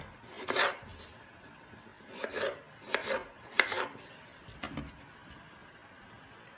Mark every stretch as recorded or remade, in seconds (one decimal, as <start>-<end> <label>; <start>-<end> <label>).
0.0-6.6 recorded

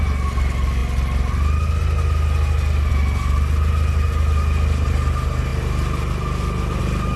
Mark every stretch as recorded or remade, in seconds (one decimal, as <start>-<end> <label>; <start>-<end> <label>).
0.0-7.2 recorded

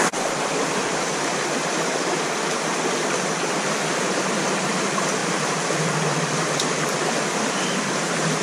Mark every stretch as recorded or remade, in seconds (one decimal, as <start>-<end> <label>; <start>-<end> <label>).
0.0-8.4 remade